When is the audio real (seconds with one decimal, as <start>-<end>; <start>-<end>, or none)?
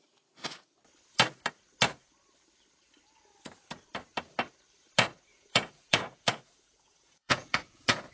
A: 0.0-5.3